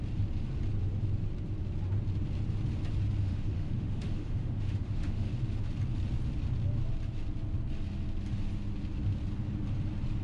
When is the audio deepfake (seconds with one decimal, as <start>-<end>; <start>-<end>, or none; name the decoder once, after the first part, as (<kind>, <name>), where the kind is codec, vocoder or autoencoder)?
3.2-5.3 (autoencoder, DAC-VAE)